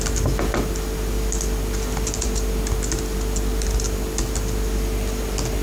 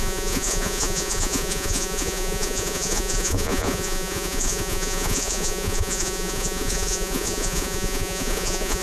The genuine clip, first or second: first